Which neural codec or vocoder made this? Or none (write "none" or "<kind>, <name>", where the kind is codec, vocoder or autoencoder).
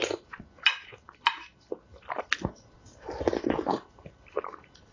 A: none